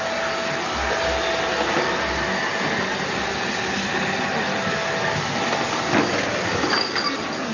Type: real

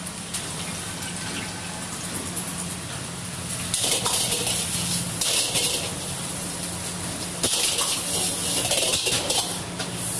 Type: real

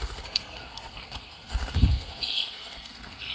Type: fake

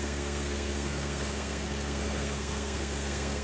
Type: fake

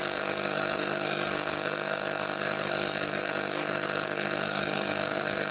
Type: fake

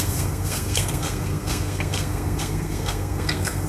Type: fake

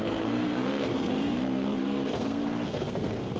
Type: fake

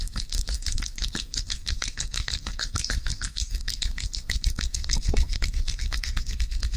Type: fake